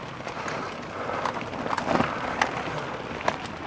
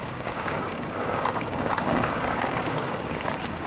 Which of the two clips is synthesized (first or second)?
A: second